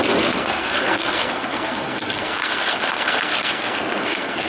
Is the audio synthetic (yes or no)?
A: yes